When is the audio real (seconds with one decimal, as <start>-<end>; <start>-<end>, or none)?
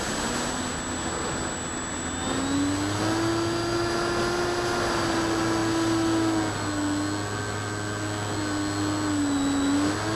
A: 0.0-10.2